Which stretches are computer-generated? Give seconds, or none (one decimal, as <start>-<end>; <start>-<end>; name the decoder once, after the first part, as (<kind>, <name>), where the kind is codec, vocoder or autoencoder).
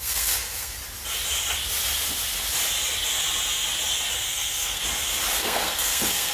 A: 0.0-0.8 (codec, SNAC); 4.1-4.8; 5.4-6.3